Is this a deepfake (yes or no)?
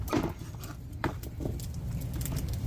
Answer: yes